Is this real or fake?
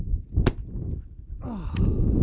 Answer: real